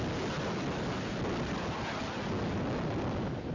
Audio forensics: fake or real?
real